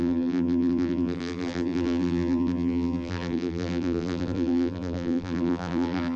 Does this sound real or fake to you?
fake